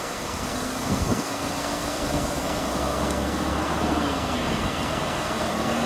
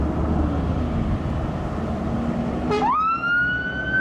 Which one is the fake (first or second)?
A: first